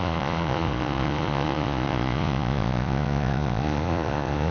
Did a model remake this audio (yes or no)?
yes